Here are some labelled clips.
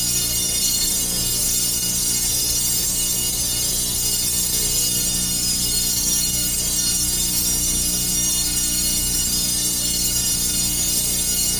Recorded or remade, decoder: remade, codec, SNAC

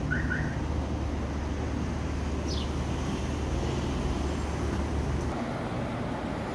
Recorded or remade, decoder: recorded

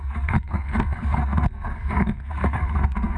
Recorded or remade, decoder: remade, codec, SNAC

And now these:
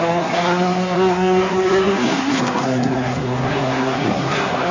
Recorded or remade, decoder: remade, codec, SNAC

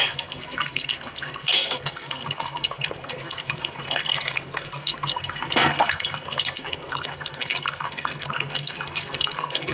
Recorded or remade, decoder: remade, codec, SNAC